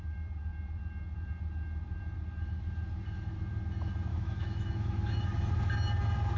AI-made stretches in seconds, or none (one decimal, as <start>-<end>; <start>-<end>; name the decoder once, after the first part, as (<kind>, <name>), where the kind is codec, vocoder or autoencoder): 4.1-5.2 (autoencoder, DAC-VAE)